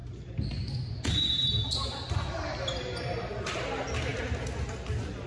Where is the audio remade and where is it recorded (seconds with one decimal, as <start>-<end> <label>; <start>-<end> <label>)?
0.0-5.3 recorded

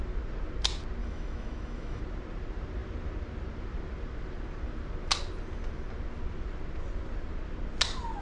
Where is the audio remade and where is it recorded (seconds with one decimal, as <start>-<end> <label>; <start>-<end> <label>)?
0.0-1.0 recorded; 1.0-2.0 remade; 2.0-8.2 recorded

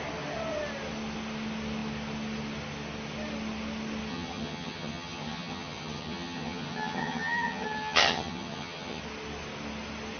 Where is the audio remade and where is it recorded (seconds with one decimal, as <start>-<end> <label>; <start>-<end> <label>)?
0.0-4.1 recorded; 4.1-9.0 remade; 9.0-10.2 recorded

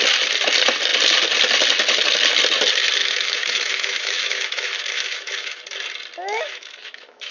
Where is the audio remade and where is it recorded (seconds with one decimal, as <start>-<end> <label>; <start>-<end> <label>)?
0.0-3.0 recorded; 3.0-5.6 remade; 5.6-6.2 recorded; 6.2-7.3 remade

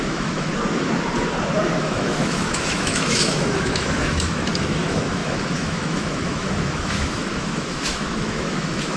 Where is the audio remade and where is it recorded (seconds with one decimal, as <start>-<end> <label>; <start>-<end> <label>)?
0.0-0.5 remade; 0.5-1.8 recorded; 1.8-9.0 remade

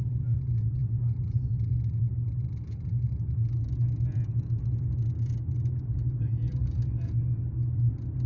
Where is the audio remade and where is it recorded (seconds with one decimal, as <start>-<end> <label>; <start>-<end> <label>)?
0.0-8.3 recorded